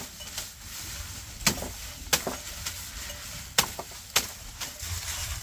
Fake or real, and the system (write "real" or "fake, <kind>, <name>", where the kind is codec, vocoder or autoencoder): real